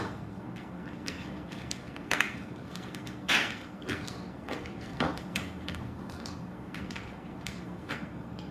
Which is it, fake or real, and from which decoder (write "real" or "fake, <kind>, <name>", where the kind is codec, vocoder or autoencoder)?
fake, codec, SNAC